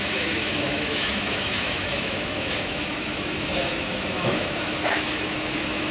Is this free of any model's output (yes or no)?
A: no